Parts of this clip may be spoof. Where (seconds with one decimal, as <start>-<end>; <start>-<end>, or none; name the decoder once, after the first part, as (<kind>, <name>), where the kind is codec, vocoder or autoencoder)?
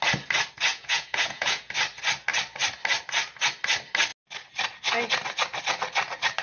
0.7-1.7 (vocoder, Vocos)